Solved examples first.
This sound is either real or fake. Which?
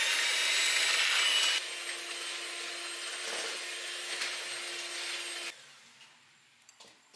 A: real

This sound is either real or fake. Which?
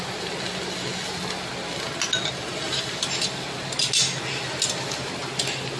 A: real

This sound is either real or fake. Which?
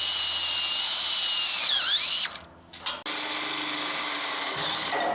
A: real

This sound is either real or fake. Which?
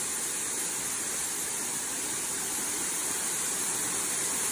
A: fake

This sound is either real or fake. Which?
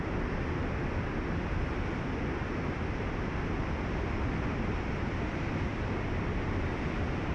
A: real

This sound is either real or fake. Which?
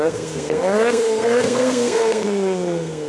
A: fake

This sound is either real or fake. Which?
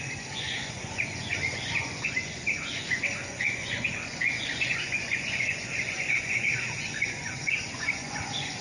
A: fake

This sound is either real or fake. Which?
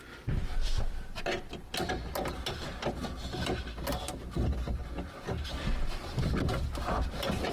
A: real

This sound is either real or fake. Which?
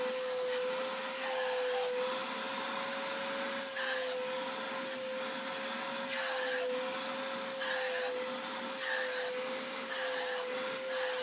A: real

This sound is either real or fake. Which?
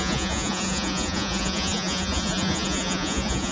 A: fake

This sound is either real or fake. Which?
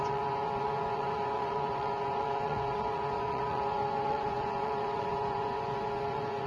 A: fake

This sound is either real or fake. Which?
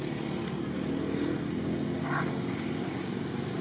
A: real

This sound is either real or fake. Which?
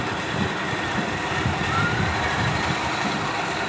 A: fake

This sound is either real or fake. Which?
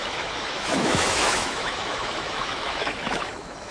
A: fake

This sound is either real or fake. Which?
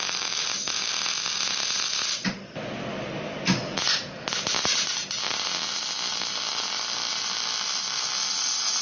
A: real